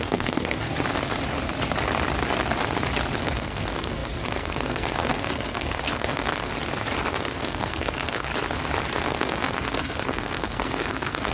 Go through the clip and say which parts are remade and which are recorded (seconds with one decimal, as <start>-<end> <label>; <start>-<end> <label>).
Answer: 0.0-0.7 remade; 0.7-3.2 recorded; 3.2-6.5 remade; 6.5-7.1 recorded; 7.1-8.3 remade; 8.3-9.0 recorded; 9.0-11.3 remade